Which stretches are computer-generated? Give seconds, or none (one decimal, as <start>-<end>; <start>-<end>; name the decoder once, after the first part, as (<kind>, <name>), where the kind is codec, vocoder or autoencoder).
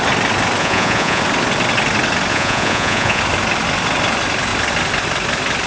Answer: 0.6-1.2 (vocoder, Vocos); 2.3-3.2